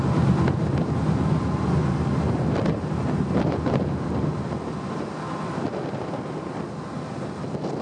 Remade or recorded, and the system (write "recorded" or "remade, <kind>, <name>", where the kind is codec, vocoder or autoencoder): recorded